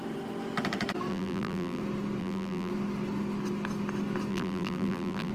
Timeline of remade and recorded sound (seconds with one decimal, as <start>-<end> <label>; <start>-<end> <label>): 0.0-1.1 recorded; 1.1-1.8 remade; 1.8-2.2 recorded; 2.2-2.7 remade; 2.7-4.3 recorded; 4.3-5.3 remade